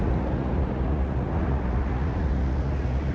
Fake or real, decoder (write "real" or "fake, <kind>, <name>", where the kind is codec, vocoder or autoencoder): fake, vocoder, Vocos